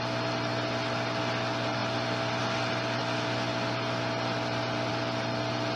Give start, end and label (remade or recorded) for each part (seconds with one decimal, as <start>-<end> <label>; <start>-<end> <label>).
0.0-1.8 recorded; 1.8-2.4 remade; 2.4-5.8 recorded